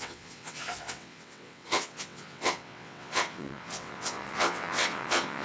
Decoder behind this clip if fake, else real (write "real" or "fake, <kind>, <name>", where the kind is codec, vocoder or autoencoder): fake, vocoder, WaveNeXt